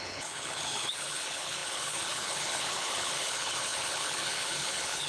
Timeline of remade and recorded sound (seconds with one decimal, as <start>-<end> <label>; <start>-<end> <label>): 0.0-5.1 remade